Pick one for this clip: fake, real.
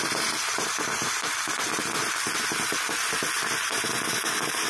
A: real